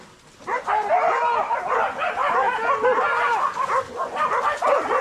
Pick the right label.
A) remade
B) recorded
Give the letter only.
B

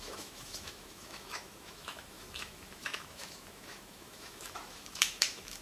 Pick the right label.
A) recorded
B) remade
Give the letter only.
B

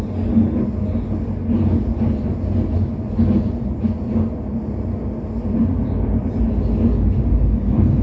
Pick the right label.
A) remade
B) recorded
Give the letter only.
B